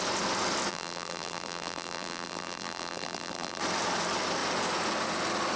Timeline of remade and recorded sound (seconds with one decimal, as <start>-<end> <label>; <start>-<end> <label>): 0.0-0.7 recorded; 0.7-3.6 remade; 3.6-5.6 recorded